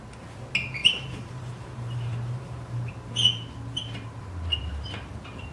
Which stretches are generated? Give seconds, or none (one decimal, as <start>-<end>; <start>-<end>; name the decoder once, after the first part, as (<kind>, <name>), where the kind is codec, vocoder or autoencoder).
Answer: 0.8-2.9 (vocoder, BigVGAN v2)